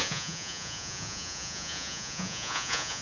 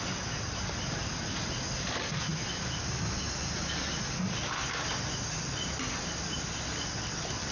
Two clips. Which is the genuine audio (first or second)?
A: second